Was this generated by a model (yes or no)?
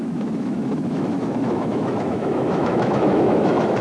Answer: yes